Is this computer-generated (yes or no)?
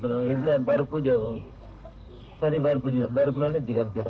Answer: yes